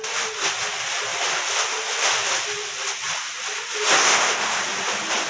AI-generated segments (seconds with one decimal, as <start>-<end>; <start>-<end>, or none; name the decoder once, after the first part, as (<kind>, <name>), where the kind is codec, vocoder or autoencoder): 4.0-4.6 (codec, ZipCodec)